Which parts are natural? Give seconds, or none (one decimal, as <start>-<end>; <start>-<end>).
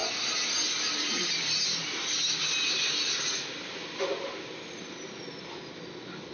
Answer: 3.5-6.3